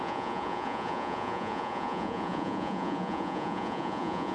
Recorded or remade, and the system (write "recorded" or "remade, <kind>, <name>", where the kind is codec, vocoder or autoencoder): remade, vocoder, Vocos